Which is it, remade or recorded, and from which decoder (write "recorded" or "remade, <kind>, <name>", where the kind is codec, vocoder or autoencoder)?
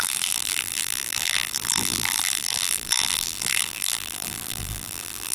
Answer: remade, vocoder, BigVGAN v2